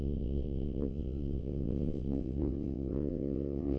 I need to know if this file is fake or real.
fake